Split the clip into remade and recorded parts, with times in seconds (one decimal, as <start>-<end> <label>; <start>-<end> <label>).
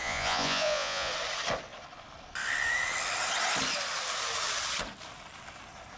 0.0-1.1 remade; 1.1-6.0 recorded